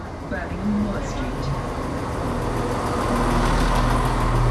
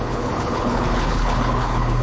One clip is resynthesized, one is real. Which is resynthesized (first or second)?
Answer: second